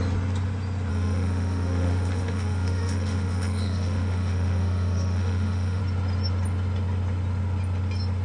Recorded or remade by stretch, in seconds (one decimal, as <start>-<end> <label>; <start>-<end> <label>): 0.0-0.9 recorded; 0.9-5.8 remade; 5.8-8.2 recorded